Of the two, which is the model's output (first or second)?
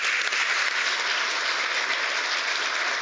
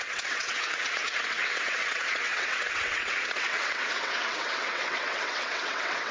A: second